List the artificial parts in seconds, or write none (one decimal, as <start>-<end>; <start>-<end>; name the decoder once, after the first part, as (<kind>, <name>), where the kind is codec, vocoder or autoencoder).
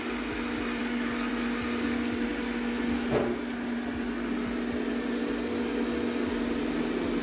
0.8-1.3 (codec, DAC)